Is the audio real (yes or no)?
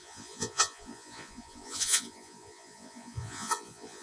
no